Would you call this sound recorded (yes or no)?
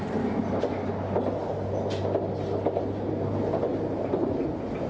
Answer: yes